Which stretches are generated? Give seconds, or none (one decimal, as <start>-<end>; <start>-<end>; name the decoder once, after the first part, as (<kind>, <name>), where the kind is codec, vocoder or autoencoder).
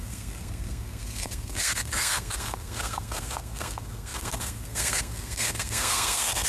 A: 0.0-6.5 (codec, SNAC)